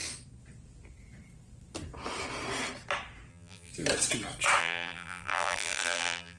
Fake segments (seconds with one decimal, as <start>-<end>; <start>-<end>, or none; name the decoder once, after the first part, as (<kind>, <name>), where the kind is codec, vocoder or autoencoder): 3.3-3.7 (vocoder, BigVGAN v2); 4.6-6.4